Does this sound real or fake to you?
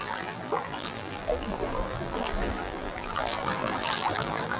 fake